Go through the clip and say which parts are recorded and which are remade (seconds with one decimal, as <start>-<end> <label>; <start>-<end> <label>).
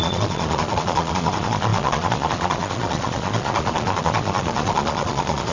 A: 0.0-5.5 remade